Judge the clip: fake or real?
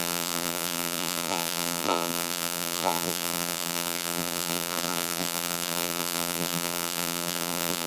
fake